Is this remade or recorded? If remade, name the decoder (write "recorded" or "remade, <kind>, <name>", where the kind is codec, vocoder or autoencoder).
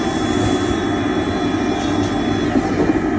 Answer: recorded